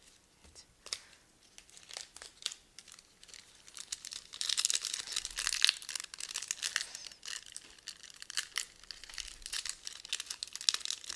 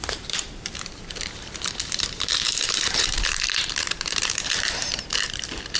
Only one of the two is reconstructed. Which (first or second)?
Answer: second